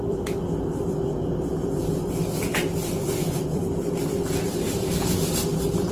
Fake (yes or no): yes